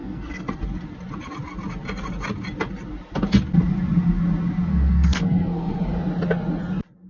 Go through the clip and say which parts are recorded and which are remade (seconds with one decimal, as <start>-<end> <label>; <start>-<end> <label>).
0.0-0.6 remade; 0.6-4.7 recorded; 4.7-5.8 remade; 5.8-7.1 recorded